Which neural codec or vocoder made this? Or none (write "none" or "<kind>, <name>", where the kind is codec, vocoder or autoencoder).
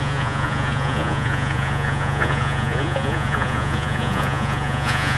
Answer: vocoder, Vocos